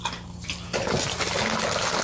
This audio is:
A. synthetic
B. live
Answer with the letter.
B